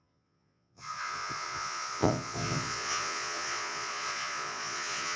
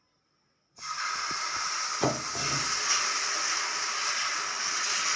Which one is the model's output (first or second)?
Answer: first